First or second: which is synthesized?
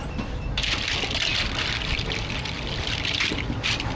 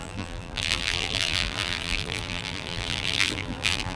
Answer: second